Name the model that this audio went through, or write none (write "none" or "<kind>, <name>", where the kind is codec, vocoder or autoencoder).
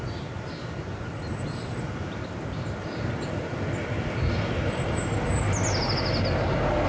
none